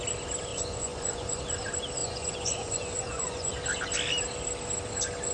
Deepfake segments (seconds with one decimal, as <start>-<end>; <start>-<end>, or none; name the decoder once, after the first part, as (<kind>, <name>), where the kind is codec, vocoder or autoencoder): 0.5-1.4 (vocoder, Vocos); 2.0-3.5